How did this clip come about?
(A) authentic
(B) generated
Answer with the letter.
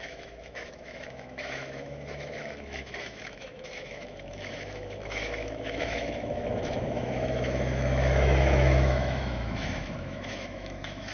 B